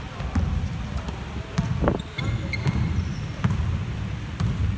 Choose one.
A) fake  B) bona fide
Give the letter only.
A